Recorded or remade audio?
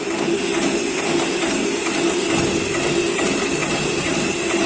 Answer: recorded